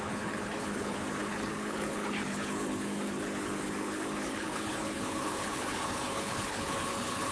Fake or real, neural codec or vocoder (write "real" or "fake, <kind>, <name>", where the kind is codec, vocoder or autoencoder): fake, codec, HILCodec